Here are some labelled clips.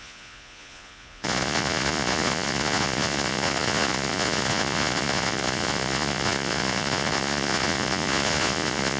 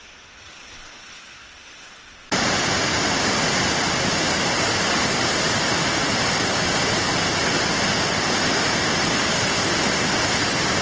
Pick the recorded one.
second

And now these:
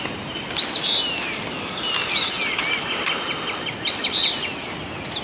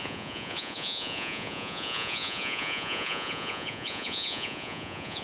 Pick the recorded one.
first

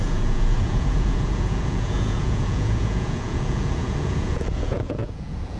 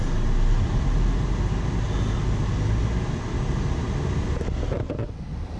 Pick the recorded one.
second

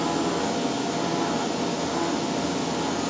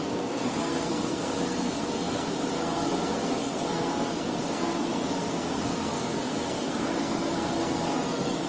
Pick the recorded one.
first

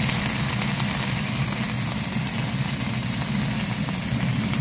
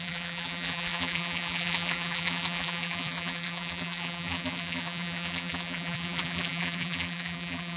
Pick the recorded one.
first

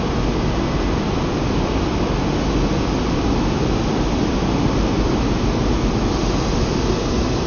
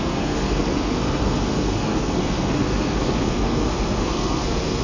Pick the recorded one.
first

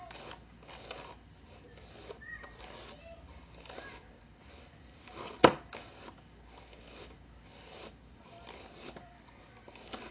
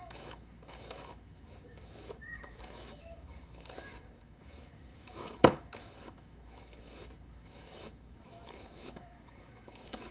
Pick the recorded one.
first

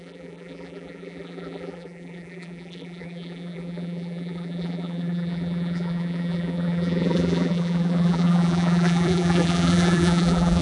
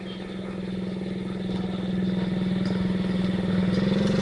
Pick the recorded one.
second